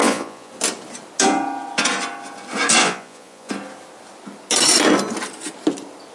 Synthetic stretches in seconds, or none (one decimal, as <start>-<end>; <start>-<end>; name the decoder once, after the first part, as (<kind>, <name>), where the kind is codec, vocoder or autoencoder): 0.0-0.5 (vocoder, Vocos); 2.8-3.5